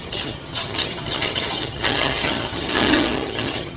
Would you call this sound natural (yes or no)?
no